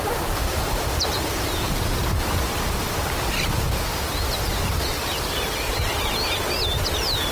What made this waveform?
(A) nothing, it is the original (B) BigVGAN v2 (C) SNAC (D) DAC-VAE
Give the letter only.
B